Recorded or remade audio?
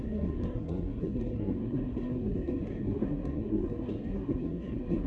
remade